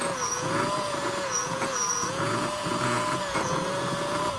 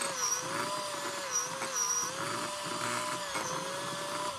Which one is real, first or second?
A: second